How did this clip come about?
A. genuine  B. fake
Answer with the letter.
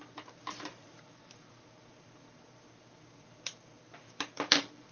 B